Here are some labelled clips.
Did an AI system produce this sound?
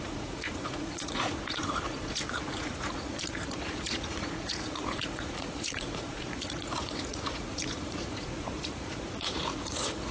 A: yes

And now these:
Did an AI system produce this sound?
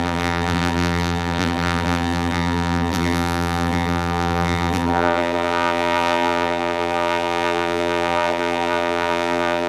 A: yes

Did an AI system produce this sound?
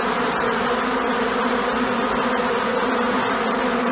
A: no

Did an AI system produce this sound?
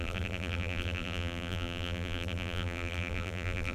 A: yes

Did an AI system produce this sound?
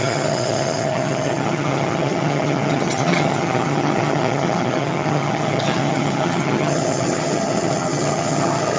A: yes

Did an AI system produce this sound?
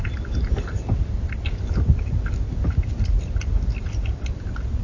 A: no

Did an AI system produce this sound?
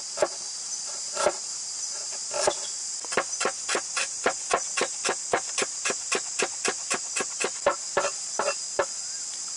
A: no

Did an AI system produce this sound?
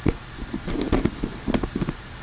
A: no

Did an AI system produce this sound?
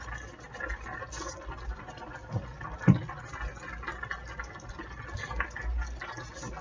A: no